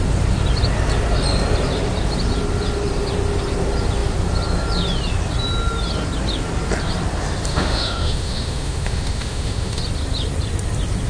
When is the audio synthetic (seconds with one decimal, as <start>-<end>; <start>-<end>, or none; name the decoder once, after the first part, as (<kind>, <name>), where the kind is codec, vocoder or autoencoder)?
7.5-9.8 (autoencoder, DAC-VAE)